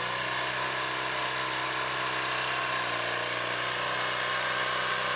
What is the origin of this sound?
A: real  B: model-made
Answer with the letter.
A